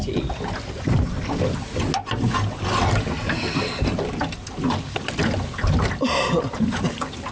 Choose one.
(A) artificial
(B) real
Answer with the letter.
B